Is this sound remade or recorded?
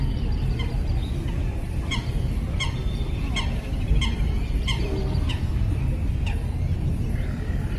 recorded